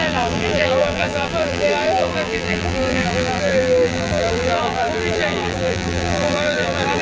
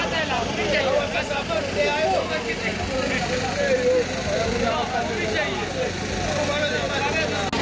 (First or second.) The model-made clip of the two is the first